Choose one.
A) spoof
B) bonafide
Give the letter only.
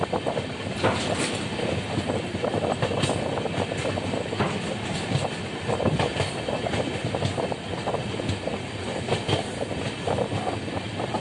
B